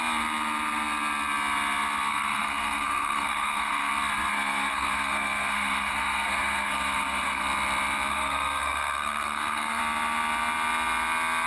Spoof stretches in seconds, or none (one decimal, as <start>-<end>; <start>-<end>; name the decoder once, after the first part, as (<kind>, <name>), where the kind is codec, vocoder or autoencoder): 2.1-3.9 (codec, SNAC); 4.3-7.4; 8.1-9.8